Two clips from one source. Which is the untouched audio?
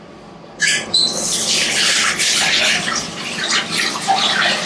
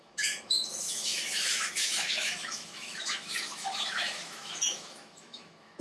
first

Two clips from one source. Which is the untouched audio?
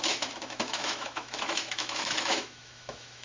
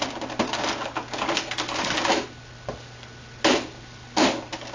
second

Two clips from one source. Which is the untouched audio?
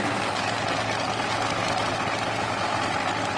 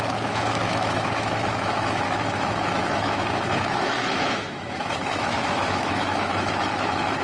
first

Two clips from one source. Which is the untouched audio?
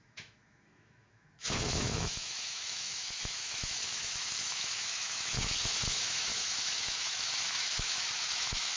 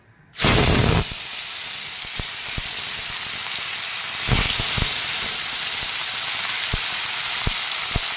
second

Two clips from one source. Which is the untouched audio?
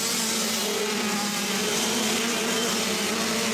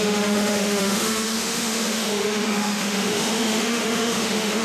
first